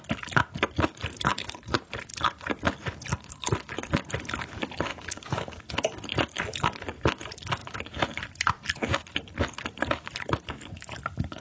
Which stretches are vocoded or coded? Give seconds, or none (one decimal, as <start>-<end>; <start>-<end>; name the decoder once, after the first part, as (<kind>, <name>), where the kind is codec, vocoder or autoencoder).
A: 4.9-5.6 (codec, DAC)